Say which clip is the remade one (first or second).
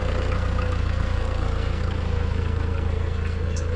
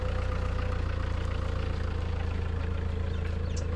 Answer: first